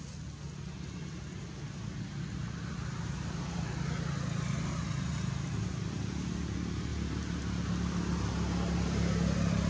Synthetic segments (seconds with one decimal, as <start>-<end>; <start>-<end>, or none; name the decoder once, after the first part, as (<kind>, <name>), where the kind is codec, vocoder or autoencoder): none